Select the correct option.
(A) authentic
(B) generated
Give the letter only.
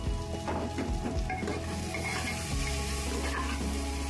A